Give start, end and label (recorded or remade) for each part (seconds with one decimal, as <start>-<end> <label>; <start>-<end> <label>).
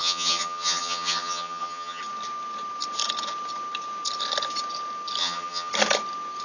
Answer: 0.0-2.0 remade; 2.0-5.2 recorded; 5.2-5.7 remade; 5.7-6.4 recorded